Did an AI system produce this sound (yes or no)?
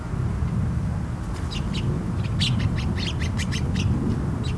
no